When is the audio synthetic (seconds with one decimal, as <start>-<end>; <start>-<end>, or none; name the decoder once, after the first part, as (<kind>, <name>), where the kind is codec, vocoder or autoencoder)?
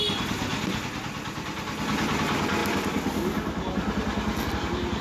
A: none